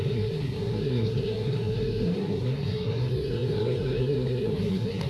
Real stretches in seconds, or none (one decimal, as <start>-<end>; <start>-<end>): none